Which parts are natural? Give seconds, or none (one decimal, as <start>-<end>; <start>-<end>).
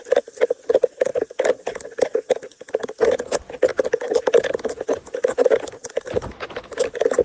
0.0-7.2